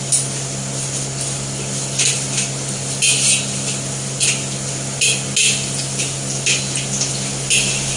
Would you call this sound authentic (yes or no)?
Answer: yes